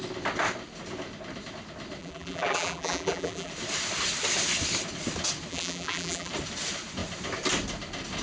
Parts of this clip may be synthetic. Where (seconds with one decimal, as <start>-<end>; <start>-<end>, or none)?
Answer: 2.0-3.5; 5.5-6.3

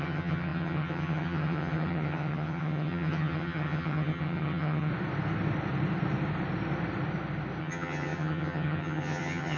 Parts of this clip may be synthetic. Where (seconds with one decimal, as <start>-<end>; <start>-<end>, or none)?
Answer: 0.0-4.9; 7.6-9.6

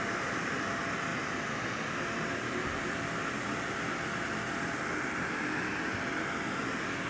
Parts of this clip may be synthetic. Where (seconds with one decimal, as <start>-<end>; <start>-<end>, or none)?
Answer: none